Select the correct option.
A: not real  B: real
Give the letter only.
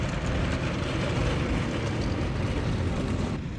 B